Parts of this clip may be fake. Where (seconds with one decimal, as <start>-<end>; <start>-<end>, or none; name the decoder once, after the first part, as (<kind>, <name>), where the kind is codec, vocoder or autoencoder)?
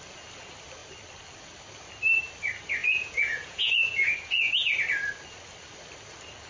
2.8-4.5 (vocoder, Vocos)